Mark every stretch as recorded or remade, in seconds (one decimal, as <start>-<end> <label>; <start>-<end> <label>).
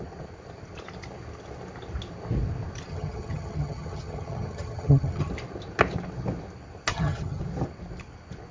0.0-2.9 recorded; 2.9-5.3 remade; 5.3-6.9 recorded; 6.9-7.4 remade; 7.4-8.5 recorded